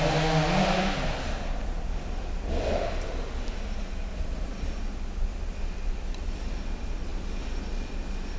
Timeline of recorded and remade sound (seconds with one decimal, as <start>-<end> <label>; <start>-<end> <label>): 0.0-4.1 recorded; 4.1-4.8 remade; 4.8-8.4 recorded